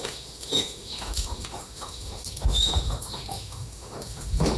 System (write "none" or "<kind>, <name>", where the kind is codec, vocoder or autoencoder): autoencoder, DAC-VAE